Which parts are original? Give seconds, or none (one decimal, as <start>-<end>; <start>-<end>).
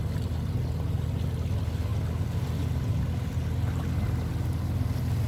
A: 0.0-5.3